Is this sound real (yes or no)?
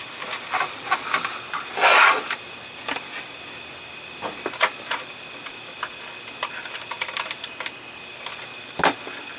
yes